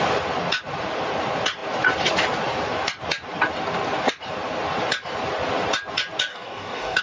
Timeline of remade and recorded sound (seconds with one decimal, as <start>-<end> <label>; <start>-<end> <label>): 0.0-6.3 recorded; 6.3-7.0 remade